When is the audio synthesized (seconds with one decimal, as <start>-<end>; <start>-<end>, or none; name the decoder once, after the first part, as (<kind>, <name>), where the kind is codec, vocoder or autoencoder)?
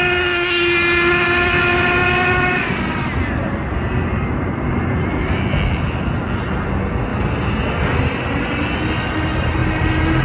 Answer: none